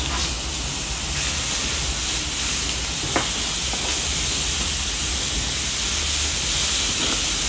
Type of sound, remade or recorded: recorded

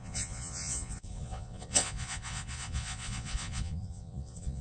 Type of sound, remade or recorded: remade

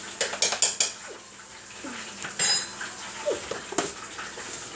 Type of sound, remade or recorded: recorded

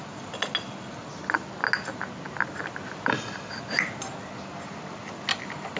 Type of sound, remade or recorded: recorded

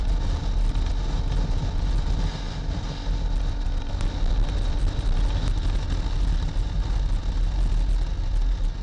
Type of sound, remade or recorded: recorded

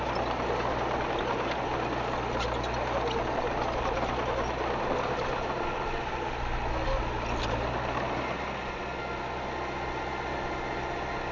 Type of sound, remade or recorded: recorded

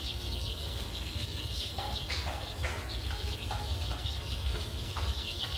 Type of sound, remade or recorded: remade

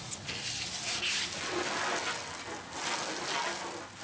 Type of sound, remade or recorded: recorded